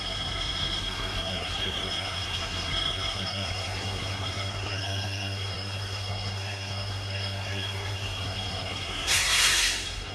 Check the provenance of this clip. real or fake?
fake